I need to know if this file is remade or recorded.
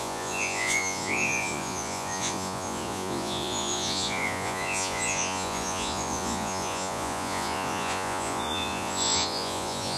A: remade